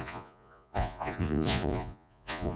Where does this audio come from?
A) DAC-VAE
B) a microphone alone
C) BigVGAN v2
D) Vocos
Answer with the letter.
D